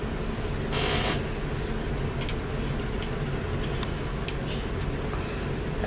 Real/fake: real